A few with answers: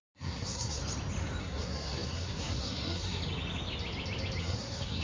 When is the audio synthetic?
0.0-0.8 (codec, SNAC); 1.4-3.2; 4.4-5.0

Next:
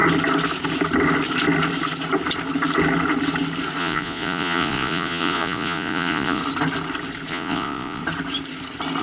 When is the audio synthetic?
3.8-6.4 (vocoder, Vocos); 7.3-8.0

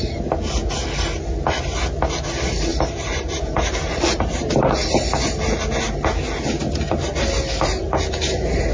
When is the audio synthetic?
2.7-3.4 (vocoder, BigVGAN v2); 3.8-4.4